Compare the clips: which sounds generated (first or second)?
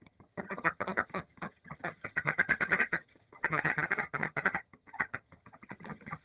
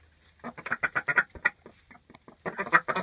first